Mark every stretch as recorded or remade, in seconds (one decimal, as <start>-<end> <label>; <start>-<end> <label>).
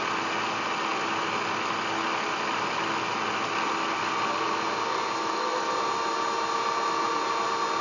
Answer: 0.0-5.2 recorded; 5.2-5.7 remade; 5.7-7.8 recorded